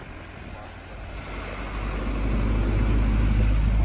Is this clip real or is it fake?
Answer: real